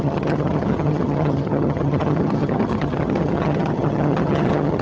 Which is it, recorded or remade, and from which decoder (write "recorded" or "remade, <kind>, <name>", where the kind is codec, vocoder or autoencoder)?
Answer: remade, vocoder, HiFi-GAN